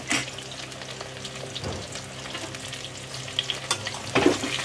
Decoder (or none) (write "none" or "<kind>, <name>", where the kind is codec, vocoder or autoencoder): none